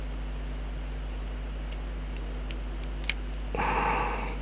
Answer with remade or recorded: recorded